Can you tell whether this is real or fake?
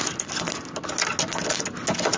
real